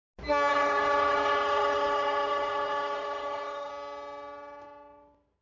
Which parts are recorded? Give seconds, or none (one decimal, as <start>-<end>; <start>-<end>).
0.0-0.5; 3.7-5.4